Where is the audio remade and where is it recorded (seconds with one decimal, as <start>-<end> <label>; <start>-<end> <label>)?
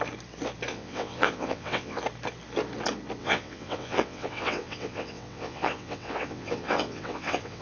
0.0-0.7 recorded; 0.7-2.0 remade; 2.0-3.2 recorded; 3.2-7.6 remade